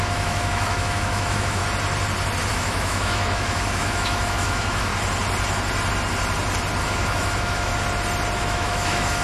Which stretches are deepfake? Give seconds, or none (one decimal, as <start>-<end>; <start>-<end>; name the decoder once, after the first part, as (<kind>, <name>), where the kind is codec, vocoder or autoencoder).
0.0-1.6 (autoencoder, DAC-VAE); 2.5-4.9; 6.8-7.7; 8.4-9.2